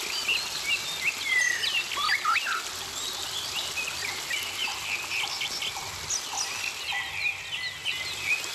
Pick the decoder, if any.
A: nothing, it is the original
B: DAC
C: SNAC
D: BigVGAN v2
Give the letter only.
A